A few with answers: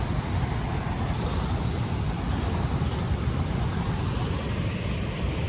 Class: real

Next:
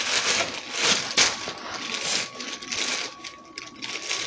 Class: real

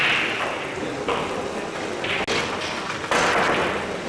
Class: real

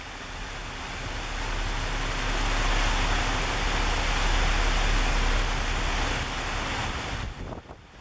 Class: real